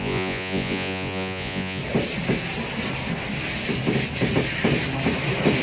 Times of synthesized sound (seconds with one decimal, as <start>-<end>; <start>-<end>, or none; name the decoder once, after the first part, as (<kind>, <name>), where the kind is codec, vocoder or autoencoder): 0.0-1.8 (vocoder, Vocos)